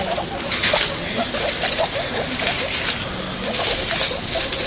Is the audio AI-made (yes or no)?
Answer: no